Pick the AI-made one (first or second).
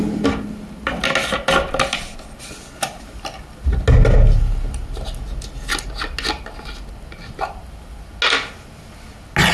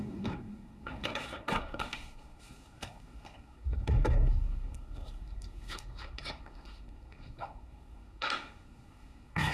second